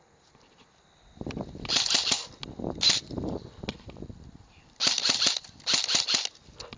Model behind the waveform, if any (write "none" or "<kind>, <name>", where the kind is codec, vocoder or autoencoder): none